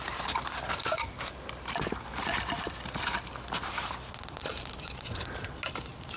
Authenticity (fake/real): real